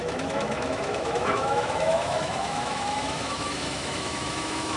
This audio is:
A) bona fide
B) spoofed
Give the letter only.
B